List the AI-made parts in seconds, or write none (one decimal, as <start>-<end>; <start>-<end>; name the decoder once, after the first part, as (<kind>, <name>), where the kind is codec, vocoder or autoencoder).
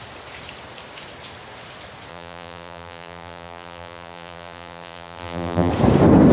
2.1-5.7 (vocoder, BigVGAN v2)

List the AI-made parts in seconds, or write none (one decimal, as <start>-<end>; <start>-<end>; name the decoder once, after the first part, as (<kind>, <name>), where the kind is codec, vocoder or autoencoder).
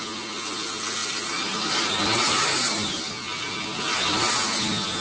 1.0-3.1 (vocoder, BigVGAN v2); 3.9-4.6